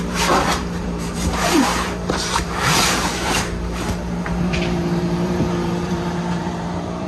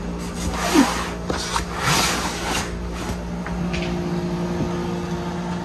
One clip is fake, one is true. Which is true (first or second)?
second